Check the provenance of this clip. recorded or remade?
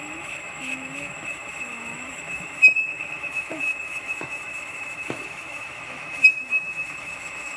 remade